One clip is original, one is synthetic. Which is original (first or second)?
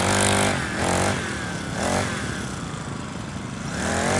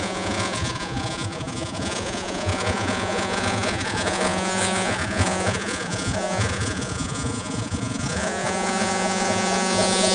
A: first